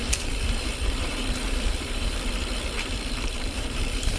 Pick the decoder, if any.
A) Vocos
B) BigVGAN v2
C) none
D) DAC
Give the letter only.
B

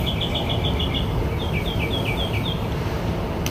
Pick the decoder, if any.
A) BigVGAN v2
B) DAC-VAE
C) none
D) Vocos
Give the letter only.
C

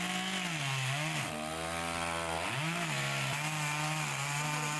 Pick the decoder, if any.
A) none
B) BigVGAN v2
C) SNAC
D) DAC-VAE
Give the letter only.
A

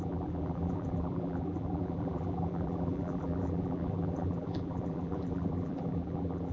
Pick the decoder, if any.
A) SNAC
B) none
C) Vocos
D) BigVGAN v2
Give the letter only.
D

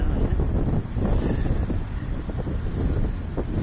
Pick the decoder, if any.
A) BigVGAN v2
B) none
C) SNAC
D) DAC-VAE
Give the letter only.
B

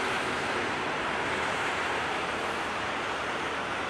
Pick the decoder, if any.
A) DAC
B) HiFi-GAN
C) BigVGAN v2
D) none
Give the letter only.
C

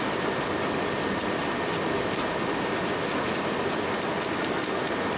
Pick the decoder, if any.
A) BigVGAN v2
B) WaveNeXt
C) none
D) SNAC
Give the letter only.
C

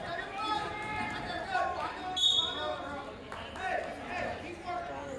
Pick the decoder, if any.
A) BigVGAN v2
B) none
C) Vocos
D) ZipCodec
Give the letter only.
B